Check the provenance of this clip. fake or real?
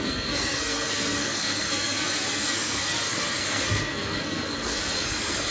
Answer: fake